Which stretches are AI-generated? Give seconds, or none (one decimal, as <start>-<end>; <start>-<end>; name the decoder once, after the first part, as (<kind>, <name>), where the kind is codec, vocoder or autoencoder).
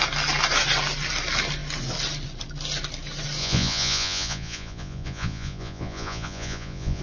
3.4-7.0 (vocoder, Vocos)